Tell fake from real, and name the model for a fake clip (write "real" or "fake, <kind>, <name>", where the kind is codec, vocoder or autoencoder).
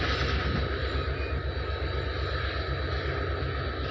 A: real